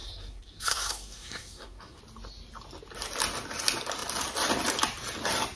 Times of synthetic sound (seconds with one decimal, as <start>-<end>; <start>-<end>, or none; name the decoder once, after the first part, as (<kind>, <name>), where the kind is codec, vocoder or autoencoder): 0.0-2.0 (codec, SNAC)